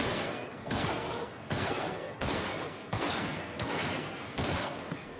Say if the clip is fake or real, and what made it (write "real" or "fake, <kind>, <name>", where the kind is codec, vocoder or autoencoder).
fake, codec, SNAC